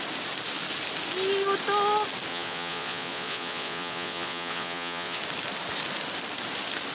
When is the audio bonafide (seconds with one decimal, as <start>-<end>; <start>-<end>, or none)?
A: 0.0-2.3; 5.2-6.9